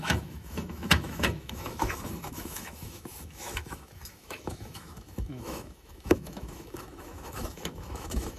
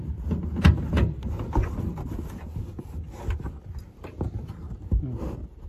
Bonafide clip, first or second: second